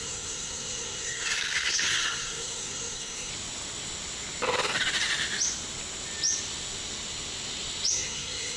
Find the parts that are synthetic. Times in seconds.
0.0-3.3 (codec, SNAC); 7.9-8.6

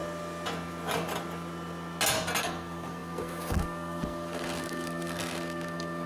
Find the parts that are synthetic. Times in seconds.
2.4-6.1 (codec, SNAC)